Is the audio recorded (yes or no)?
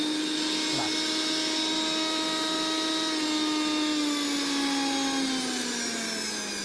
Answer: yes